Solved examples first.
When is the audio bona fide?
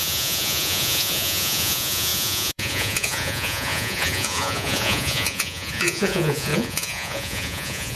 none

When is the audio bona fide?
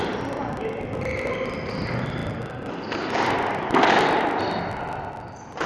0.0-5.7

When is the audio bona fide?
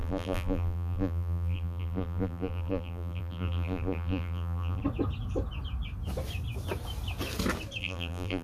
4.8-7.8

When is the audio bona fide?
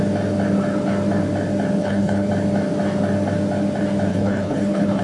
0.0-1.8; 2.3-4.1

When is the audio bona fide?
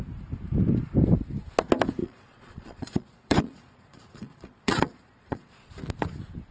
0.0-2.0; 5.7-6.5